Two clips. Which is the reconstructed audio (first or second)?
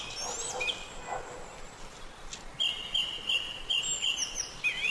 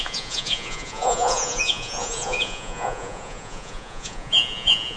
second